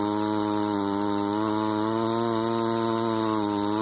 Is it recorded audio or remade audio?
recorded